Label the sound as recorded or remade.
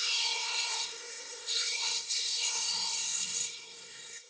remade